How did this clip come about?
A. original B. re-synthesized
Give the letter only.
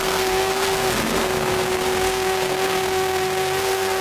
B